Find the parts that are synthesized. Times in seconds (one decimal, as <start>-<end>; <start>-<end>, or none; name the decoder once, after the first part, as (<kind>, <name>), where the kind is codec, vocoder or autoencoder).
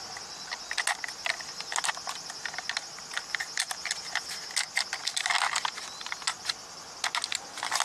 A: none